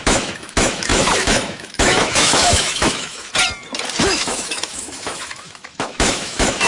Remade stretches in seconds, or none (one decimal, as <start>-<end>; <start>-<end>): 0.0-3.3; 4.0-6.7